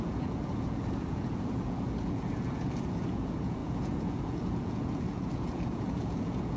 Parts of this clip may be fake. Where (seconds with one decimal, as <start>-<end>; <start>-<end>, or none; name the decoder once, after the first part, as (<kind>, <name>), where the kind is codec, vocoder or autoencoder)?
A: 0.0-6.6 (vocoder, Vocos)